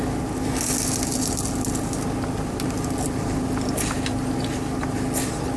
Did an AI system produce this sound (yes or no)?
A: no